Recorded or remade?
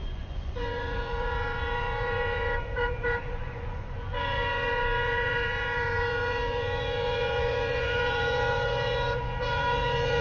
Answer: remade